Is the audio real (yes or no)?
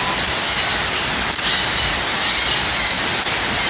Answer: yes